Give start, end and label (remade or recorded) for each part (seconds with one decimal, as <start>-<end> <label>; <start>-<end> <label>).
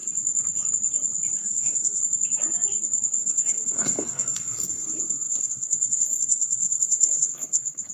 0.0-1.4 recorded; 1.4-2.0 remade; 2.0-3.2 recorded; 3.2-7.9 remade